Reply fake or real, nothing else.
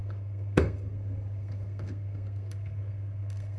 fake